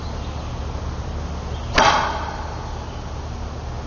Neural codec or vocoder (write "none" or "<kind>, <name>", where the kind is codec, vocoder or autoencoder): none